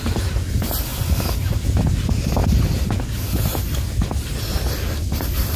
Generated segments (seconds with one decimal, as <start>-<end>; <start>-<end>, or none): none